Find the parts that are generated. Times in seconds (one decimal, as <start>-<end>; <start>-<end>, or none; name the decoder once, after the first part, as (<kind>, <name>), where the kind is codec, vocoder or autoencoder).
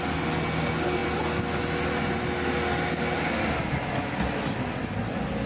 none